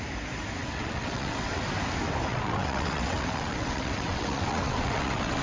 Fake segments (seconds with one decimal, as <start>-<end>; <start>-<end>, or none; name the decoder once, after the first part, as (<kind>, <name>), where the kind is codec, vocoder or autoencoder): 0.6-1.6 (vocoder, WaveNeXt); 2.3-5.4